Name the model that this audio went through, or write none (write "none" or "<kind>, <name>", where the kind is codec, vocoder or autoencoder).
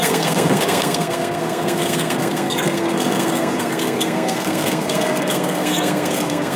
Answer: codec, SNAC